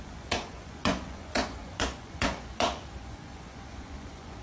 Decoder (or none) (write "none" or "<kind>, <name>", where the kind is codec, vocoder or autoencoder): vocoder, Vocos